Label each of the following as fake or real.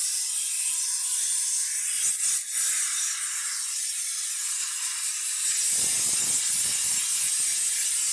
real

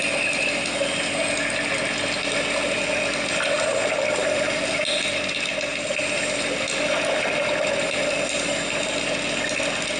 real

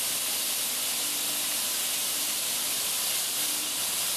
fake